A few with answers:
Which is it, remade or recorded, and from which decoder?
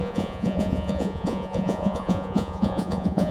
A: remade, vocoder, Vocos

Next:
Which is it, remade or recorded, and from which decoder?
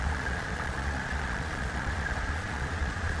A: remade, vocoder, Vocos